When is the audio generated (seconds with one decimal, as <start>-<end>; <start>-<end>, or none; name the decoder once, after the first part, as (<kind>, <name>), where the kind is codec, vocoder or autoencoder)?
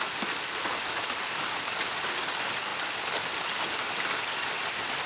none